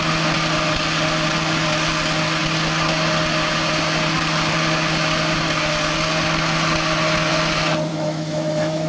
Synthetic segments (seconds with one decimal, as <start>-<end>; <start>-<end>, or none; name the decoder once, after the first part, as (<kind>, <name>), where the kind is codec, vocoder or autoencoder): 7.9-8.9 (autoencoder, DAC-VAE)